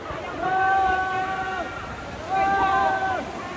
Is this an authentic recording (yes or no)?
yes